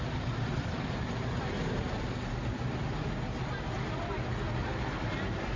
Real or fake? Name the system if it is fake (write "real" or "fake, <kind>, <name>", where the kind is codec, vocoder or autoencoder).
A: real